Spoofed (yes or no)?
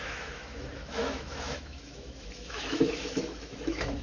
yes